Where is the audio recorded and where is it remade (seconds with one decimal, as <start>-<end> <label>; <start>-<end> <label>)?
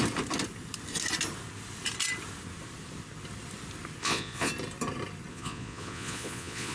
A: 0.0-4.0 recorded; 4.0-4.5 remade; 4.5-5.3 recorded; 5.3-6.7 remade